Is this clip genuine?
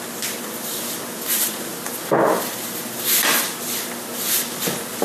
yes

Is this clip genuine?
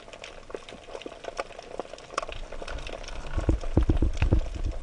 yes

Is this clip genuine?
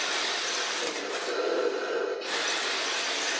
yes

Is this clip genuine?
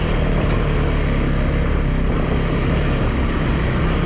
yes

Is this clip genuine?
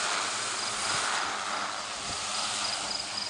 yes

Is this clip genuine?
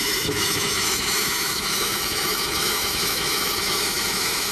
no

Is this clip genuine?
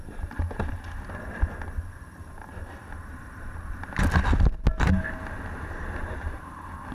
yes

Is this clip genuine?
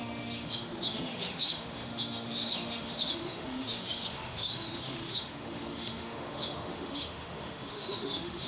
no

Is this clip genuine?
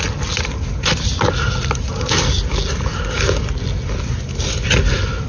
yes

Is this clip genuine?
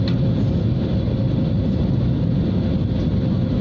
yes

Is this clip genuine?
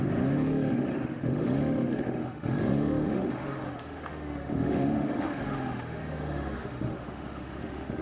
no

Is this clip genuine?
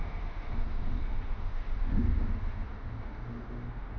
no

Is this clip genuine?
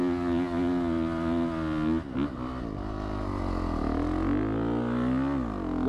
yes